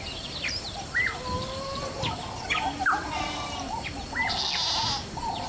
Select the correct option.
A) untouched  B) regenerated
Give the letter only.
A